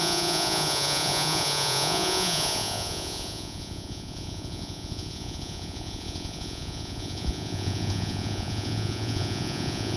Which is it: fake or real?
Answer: fake